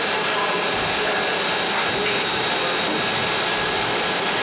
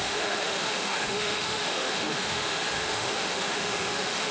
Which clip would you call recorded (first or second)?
first